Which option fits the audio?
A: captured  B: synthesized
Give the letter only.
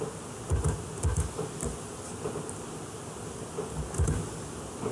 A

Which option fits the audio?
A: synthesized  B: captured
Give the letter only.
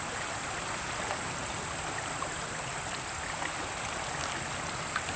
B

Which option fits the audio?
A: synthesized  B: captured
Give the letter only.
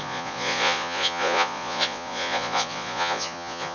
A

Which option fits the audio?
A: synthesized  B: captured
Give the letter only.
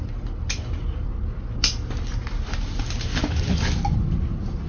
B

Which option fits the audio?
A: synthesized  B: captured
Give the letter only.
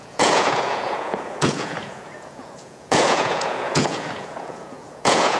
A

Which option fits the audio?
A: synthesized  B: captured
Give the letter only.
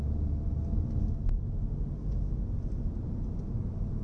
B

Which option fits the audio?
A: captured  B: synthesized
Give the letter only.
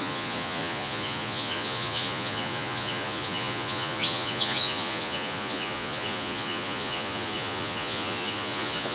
B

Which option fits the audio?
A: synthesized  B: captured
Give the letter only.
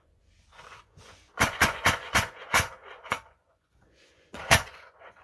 A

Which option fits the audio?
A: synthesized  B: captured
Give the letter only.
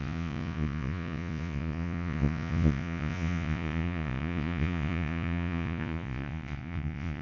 A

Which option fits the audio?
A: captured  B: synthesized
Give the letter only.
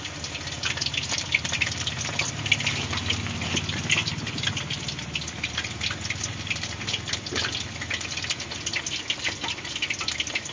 A